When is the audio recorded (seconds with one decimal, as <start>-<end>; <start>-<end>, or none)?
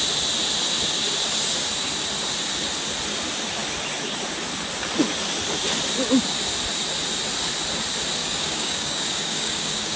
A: 0.0-8.2